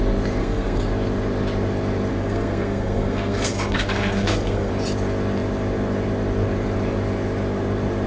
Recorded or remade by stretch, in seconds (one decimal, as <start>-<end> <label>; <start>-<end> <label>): 0.0-0.4 recorded; 0.4-0.9 remade; 0.9-2.1 recorded; 2.1-4.7 remade; 4.7-8.1 recorded